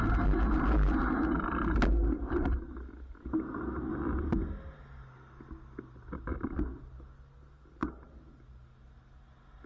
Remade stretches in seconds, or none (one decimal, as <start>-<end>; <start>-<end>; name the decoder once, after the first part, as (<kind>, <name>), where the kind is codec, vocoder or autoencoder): none